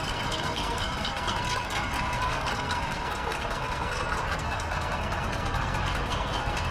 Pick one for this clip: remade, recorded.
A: remade